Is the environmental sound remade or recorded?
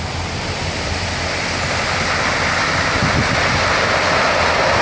recorded